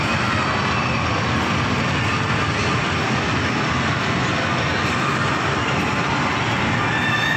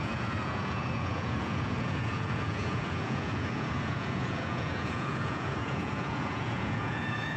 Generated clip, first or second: second